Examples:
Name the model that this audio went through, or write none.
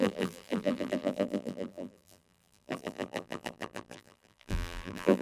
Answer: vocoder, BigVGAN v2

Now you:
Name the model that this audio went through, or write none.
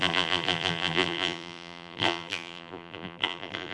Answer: vocoder, BigVGAN v2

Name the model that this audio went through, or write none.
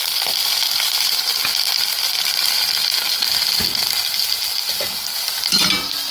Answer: none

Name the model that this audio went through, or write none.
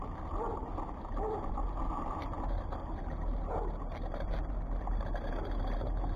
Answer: none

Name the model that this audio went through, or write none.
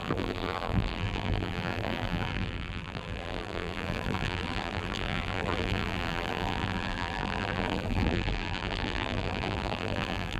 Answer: vocoder, BigVGAN v2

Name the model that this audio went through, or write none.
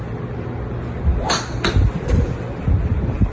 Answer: none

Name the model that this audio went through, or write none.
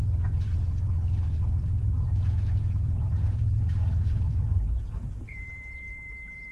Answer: vocoder, BigVGAN v2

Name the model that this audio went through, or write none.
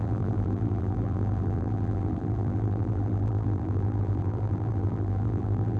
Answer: vocoder, BigVGAN v2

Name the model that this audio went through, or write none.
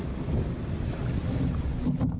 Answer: none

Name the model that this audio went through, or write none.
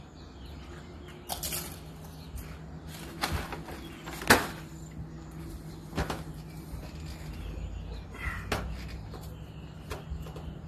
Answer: none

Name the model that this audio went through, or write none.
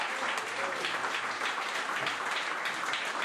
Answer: none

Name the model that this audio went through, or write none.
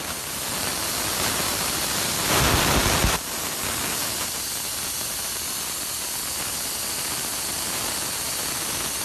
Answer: none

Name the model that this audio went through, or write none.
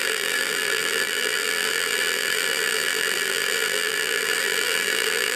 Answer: vocoder, BigVGAN v2